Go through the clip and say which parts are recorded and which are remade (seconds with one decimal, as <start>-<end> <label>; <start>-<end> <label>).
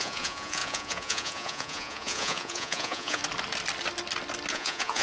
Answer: 0.0-3.2 remade; 3.2-4.5 recorded; 4.5-5.0 remade